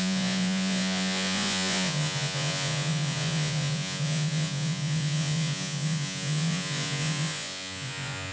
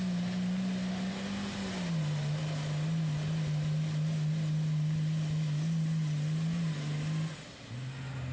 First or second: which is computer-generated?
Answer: first